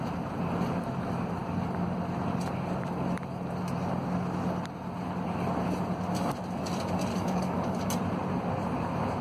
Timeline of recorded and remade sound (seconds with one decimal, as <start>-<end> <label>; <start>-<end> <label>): 0.0-7.1 recorded; 7.1-7.9 remade; 7.9-9.2 recorded